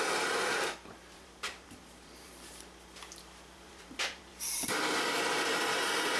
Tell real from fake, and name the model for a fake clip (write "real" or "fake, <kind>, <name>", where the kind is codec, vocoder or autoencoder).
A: fake, vocoder, BigVGAN v2